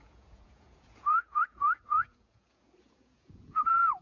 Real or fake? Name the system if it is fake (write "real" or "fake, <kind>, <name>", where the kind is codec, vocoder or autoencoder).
fake, vocoder, Vocos